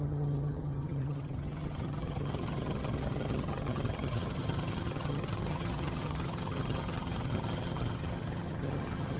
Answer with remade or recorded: remade